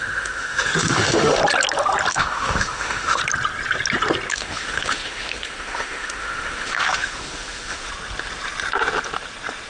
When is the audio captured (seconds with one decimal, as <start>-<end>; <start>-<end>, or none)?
1.4-2.1; 3.2-4.3; 7.9-9.7